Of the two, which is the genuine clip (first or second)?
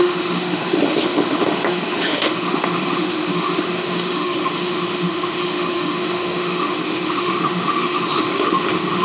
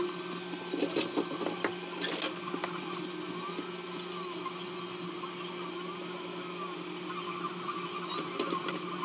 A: second